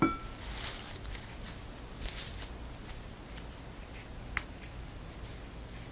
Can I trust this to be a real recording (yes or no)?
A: yes